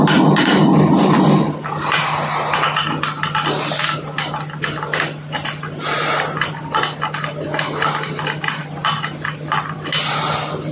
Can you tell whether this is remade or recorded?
recorded